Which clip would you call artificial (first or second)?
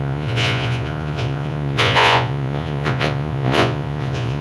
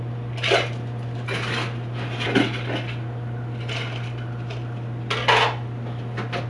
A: first